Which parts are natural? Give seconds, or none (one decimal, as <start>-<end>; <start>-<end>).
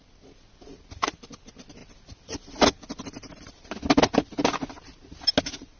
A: 0.0-5.8